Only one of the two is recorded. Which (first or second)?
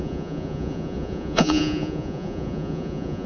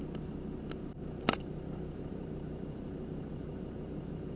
second